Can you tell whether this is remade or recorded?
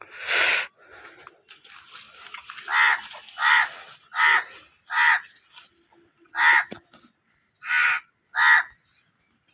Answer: recorded